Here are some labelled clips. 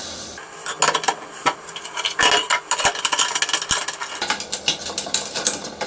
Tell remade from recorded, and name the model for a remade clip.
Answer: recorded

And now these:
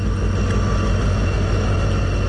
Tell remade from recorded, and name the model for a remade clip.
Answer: recorded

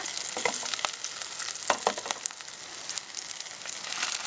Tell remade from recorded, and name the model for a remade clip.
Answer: recorded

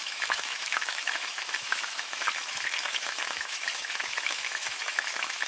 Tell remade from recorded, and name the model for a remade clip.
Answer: remade, autoencoder, DAC-VAE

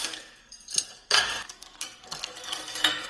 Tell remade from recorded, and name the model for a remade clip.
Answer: remade, codec, SNAC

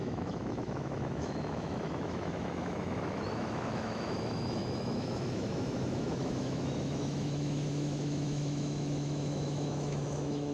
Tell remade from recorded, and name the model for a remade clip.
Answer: remade, autoencoder, DAC-VAE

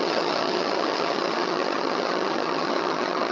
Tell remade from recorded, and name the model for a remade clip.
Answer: remade, vocoder, HiFi-GAN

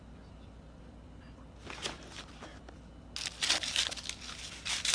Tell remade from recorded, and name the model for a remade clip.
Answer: recorded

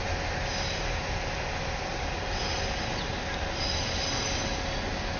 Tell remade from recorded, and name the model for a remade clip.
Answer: recorded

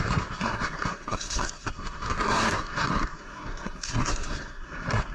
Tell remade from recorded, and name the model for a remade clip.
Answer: remade, codec, SNAC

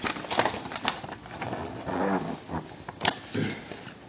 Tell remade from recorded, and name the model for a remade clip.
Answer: recorded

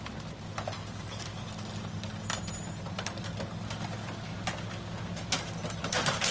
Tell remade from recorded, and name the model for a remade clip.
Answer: recorded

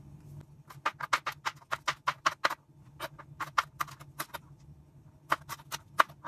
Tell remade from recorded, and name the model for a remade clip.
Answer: recorded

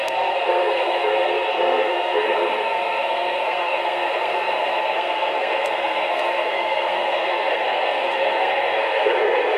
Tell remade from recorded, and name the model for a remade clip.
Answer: remade, codec, SNAC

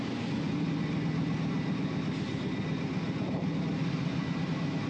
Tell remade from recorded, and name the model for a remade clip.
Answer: recorded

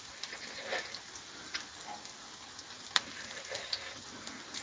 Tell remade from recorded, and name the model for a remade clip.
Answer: recorded